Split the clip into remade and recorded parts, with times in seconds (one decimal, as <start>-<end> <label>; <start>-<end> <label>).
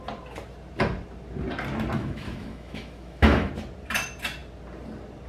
0.0-2.0 recorded; 2.0-3.5 remade; 3.5-5.3 recorded